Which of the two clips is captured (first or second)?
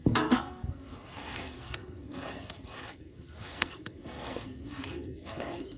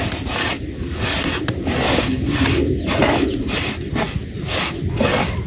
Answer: second